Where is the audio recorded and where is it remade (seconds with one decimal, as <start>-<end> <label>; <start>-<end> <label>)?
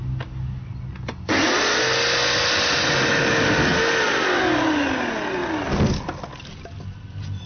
0.0-7.5 recorded